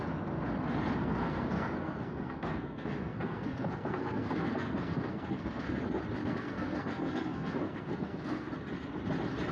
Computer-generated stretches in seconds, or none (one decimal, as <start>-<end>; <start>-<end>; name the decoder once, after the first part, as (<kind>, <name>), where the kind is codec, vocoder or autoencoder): 1.0-5.8 (codec, SNAC); 6.2-8.5